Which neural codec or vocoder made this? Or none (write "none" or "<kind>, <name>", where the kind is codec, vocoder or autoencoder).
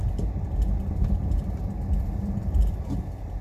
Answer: none